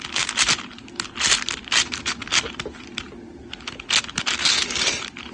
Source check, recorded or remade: recorded